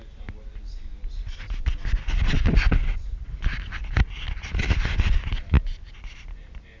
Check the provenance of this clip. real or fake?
real